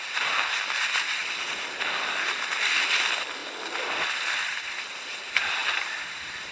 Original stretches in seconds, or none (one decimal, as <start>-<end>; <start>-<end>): 0.0-1.2; 2.5-3.4; 5.1-5.6